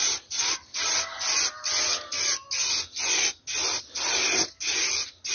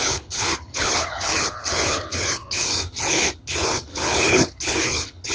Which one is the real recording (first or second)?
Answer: first